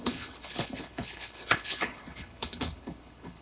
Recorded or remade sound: remade